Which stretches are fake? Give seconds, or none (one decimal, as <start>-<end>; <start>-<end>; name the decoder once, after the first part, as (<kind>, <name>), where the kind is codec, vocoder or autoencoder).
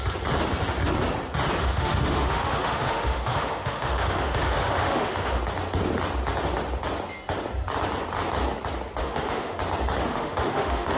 1.6-5.4 (autoencoder, DAC-VAE); 9.0-9.6; 10.1-11.0